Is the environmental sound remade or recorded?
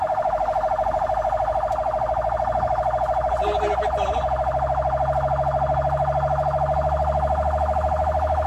recorded